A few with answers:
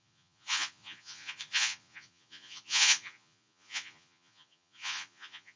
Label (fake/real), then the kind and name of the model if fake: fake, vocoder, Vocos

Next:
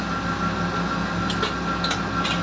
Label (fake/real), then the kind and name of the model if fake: real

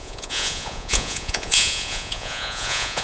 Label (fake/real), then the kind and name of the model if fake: fake, vocoder, Vocos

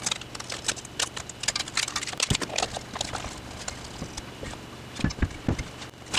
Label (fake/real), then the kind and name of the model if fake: real